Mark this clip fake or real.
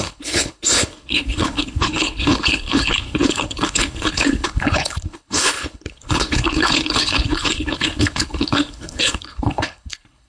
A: fake